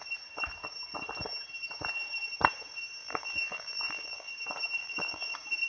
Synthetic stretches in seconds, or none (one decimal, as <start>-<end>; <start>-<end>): 3.0-4.3; 4.8-5.3